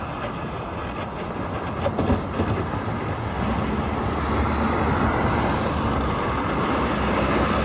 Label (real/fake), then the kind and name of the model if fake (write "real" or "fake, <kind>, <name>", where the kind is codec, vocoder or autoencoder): real